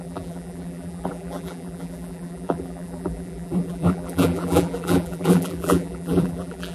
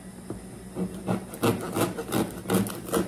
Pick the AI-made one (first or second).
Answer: first